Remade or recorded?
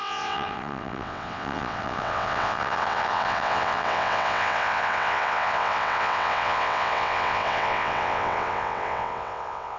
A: remade